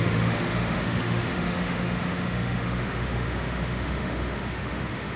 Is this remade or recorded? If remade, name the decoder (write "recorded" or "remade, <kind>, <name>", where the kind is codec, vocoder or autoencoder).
remade, autoencoder, DAC-VAE